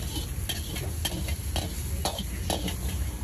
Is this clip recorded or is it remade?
recorded